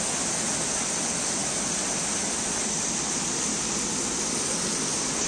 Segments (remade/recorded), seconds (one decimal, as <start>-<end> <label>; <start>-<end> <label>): 0.0-5.3 recorded